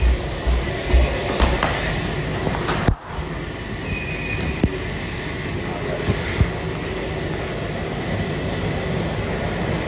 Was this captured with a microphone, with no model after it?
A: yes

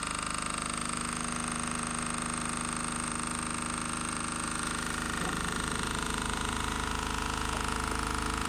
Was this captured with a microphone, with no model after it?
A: no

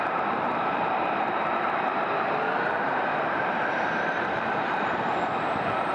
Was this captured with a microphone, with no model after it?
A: no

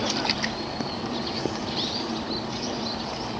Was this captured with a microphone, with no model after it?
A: yes